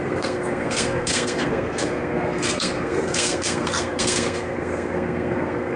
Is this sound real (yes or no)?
no